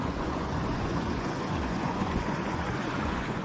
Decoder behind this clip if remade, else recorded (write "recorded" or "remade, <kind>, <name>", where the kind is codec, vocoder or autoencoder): remade, vocoder, Vocos